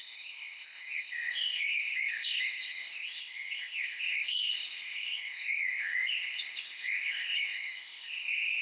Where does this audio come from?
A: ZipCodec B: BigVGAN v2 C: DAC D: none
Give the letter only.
A